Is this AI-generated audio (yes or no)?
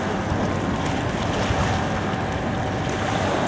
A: no